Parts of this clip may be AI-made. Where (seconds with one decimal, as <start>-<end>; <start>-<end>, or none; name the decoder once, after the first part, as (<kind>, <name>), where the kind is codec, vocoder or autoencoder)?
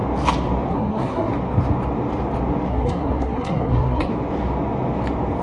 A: 0.7-1.3 (codec, SNAC); 2.7-4.1